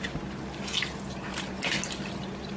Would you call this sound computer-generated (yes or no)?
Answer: no